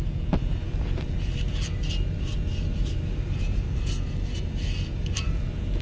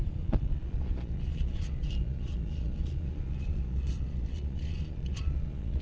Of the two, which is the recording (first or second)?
first